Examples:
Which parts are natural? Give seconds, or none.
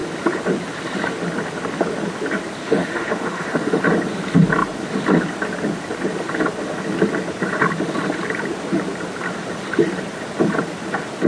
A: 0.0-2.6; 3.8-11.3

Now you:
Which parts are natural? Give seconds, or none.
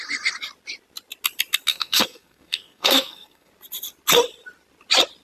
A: 0.0-1.7; 3.5-5.2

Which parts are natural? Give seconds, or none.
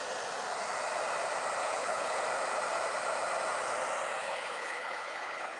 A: 0.0-1.6; 2.2-4.2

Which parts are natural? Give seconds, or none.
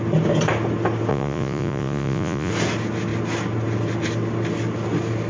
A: 0.0-1.1; 2.5-5.3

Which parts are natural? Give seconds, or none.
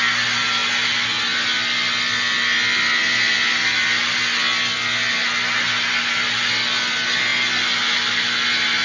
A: 0.0-8.8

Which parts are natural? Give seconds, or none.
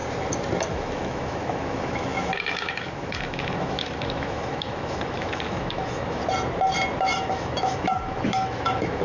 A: 0.0-0.7; 6.2-7.0